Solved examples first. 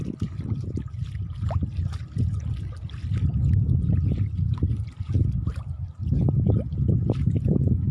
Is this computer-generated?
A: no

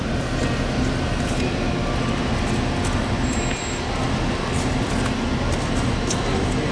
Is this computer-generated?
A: no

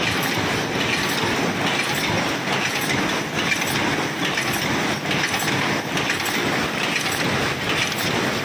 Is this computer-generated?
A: no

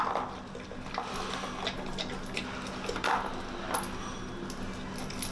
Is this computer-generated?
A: no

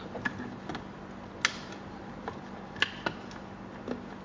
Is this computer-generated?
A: no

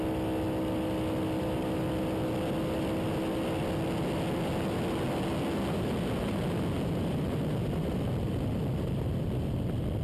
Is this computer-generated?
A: no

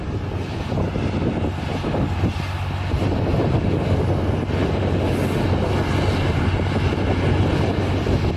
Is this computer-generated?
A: no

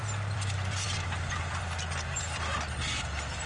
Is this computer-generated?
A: yes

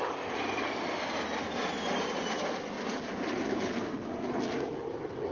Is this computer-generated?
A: no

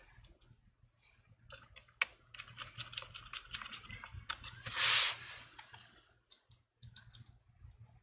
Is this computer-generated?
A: no